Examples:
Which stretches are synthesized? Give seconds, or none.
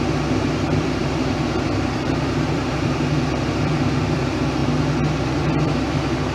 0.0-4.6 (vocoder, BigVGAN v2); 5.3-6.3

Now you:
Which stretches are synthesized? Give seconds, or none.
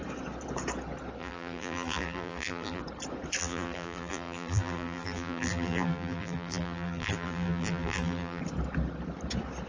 1.2-2.8 (vocoder, BigVGAN v2); 3.4-8.4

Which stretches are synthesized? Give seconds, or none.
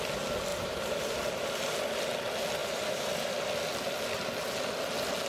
0.5-1.0 (vocoder, BigVGAN v2); 2.6-3.3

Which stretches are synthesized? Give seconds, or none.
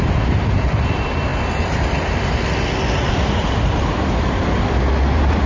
0.0-1.3 (vocoder, BigVGAN v2); 3.1-5.5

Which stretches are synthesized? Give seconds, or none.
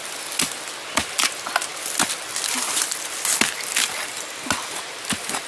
none